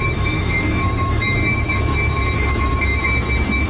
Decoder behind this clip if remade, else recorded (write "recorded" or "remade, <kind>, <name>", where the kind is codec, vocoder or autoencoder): remade, autoencoder, DAC-VAE